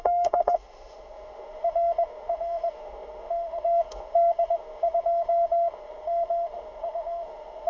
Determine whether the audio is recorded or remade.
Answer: remade